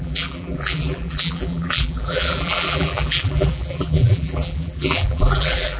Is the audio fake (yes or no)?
yes